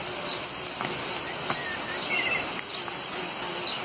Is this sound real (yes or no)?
yes